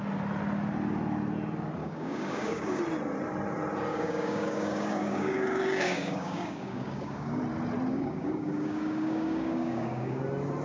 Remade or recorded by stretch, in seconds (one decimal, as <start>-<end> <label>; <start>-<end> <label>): 0.0-1.8 recorded; 1.8-2.8 remade; 2.8-3.9 recorded; 3.9-7.4 remade; 7.4-7.9 recorded; 7.9-10.2 remade; 10.2-10.6 recorded